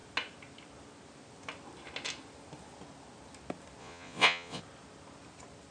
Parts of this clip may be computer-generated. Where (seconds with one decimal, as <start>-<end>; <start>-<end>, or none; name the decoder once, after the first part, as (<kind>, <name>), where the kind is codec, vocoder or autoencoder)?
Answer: 3.8-4.6 (vocoder, Vocos)